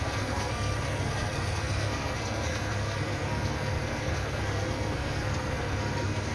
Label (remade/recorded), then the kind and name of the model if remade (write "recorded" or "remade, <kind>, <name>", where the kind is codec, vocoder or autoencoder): remade, codec, SNAC